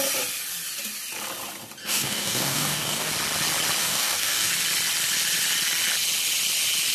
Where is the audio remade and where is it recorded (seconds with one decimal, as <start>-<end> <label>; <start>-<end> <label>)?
0.0-1.8 recorded; 1.8-3.1 remade; 3.1-3.8 recorded; 3.8-4.5 remade; 4.5-6.9 recorded